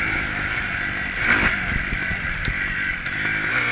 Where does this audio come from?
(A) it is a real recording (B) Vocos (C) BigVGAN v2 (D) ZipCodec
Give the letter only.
A